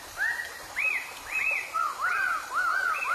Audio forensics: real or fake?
fake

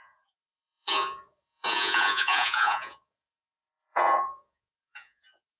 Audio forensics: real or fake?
fake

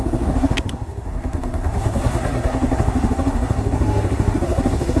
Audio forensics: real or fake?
fake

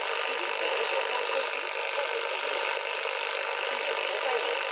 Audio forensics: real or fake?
real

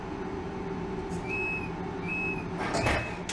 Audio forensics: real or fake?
real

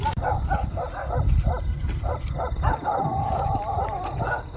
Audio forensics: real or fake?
real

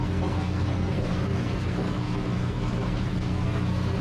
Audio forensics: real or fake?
fake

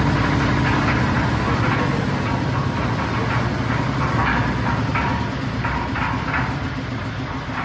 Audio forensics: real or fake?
real